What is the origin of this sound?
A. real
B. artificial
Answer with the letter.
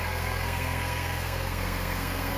B